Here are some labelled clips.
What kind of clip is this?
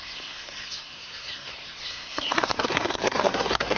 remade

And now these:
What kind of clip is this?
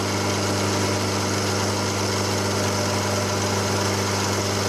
recorded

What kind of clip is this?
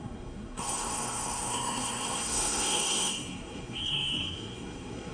remade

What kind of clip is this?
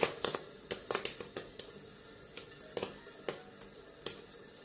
recorded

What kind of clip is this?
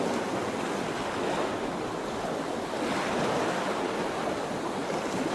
recorded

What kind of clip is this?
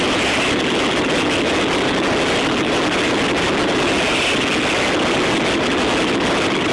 recorded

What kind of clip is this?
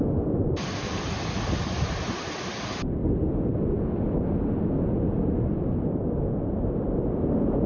recorded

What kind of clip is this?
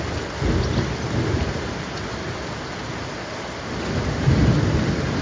recorded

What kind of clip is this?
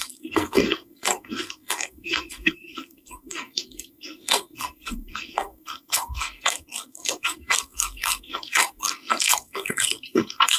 remade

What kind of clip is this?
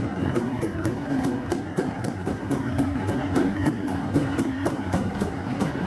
remade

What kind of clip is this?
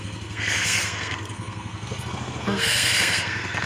remade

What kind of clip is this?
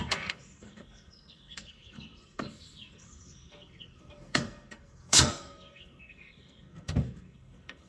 remade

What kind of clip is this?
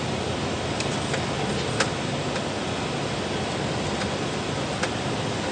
recorded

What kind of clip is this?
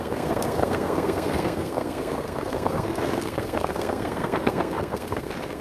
remade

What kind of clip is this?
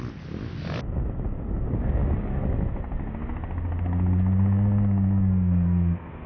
recorded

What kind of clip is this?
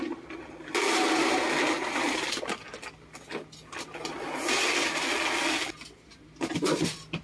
recorded